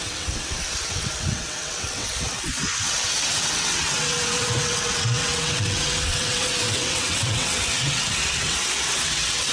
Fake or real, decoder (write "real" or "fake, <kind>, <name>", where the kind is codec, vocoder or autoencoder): fake, vocoder, WaveNeXt